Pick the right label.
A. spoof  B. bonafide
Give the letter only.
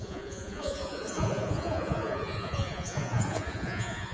A